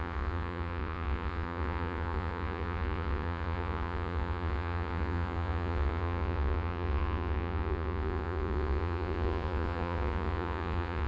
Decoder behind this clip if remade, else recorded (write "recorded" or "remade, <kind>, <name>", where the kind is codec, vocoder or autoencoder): remade, vocoder, Vocos